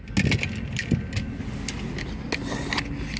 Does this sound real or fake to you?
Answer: real